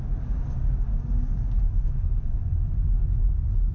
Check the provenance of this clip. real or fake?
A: real